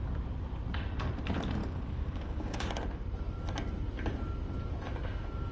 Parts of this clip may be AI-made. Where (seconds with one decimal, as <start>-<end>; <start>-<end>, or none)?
1.6-2.7